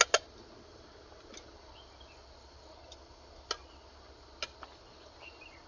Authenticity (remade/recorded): recorded